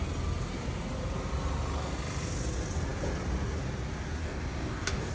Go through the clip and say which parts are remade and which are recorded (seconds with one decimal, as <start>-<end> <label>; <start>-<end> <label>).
0.0-4.2 recorded; 4.2-5.1 remade